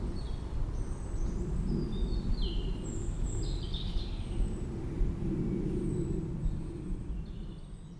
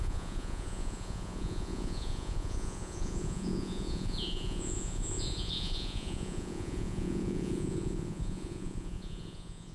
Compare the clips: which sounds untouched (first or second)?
first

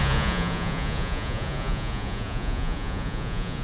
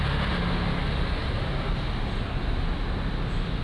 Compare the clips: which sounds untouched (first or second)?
second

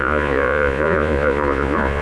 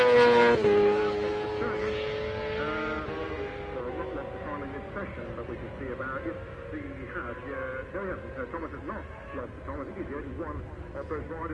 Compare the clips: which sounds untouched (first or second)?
second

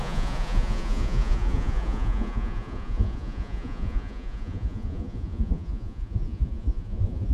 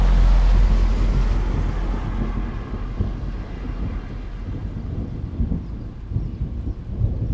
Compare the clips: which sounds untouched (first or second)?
second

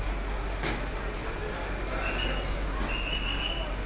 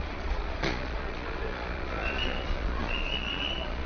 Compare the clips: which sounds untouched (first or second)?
first